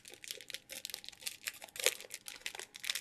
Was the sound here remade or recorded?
recorded